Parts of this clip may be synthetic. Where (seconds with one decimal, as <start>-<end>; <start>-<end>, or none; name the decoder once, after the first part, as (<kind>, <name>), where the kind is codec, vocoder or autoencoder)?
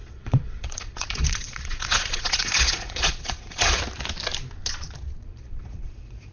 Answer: 0.0-3.8 (vocoder, Vocos); 5.2-6.3